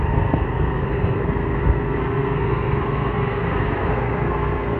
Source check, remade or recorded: remade